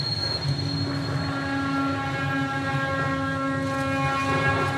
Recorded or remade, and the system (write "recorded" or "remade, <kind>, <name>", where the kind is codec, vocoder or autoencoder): recorded